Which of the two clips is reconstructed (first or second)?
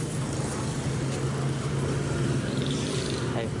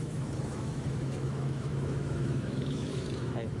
second